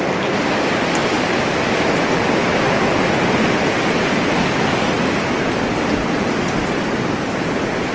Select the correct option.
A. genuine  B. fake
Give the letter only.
A